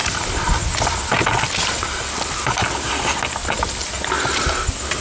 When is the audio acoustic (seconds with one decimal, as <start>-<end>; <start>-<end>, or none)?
0.0-5.0